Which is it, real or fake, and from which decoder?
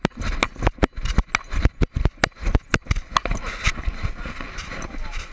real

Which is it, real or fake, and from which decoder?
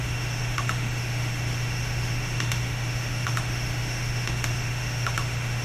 fake, autoencoder, DAC-VAE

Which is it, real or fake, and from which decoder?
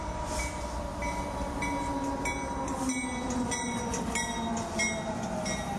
real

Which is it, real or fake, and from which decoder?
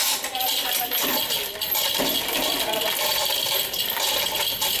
fake, vocoder, BigVGAN v2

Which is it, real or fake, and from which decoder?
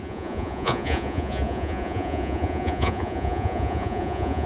fake, vocoder, Vocos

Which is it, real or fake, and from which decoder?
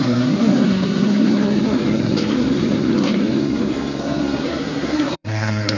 fake, codec, SNAC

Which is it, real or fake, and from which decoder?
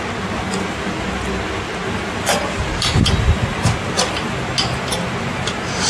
real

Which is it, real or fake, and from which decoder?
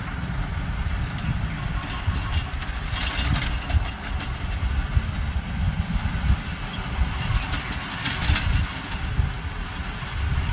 real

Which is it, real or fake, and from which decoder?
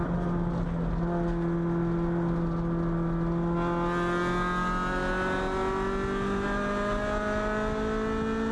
real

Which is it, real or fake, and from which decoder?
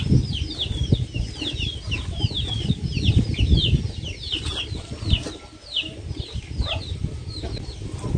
real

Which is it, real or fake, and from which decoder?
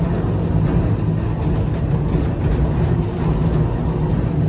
real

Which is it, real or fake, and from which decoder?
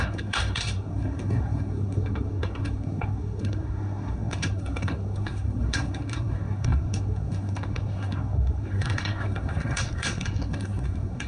fake, codec, SNAC